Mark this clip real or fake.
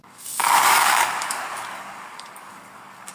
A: fake